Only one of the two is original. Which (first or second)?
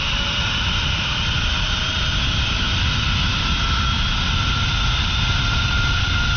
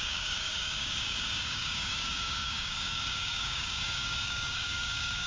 first